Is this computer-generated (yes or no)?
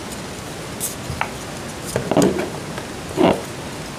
no